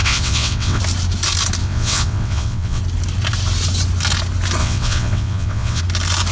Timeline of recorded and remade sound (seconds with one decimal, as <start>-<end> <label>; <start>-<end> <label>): 0.0-0.8 remade; 0.8-1.6 recorded; 1.6-2.8 remade; 2.8-4.6 recorded; 4.6-5.8 remade; 5.8-6.3 recorded